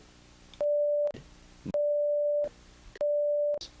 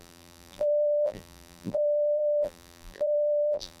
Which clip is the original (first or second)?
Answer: first